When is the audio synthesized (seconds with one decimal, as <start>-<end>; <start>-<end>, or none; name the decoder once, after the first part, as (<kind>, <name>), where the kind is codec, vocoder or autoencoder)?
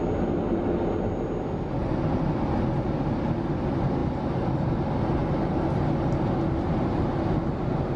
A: 1.8-2.4 (vocoder, BigVGAN v2); 4.0-4.7